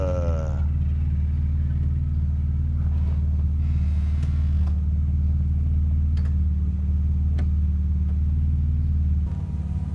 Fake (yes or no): no